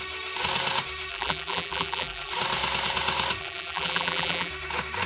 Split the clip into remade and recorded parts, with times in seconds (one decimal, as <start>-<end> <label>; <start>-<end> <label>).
0.0-1.1 recorded; 1.1-2.3 remade; 2.3-3.4 recorded; 3.4-4.5 remade; 4.5-5.1 recorded